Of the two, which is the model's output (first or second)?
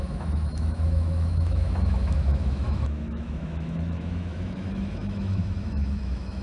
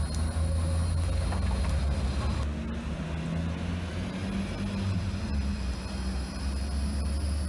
first